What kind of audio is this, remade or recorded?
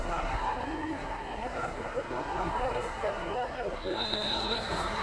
remade